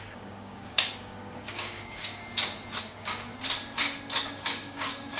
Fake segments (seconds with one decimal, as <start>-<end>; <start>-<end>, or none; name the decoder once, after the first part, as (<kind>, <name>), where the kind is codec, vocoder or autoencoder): 0.0-2.2 (codec, DAC); 2.8-3.3; 4.2-5.2